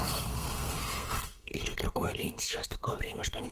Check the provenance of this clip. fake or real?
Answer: fake